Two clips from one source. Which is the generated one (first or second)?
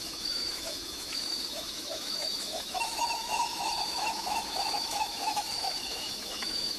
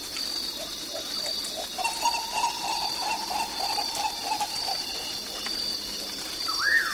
first